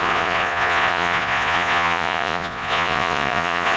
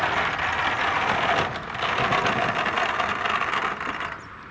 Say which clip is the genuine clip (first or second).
second